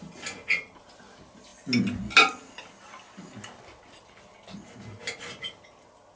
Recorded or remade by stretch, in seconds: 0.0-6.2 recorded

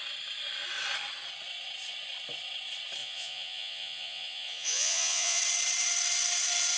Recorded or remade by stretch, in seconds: 0.0-3.0 recorded; 3.0-5.4 remade; 5.4-6.8 recorded

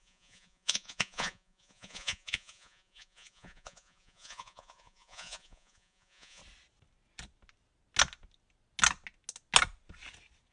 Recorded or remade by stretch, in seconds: 0.0-6.4 remade; 6.4-10.5 recorded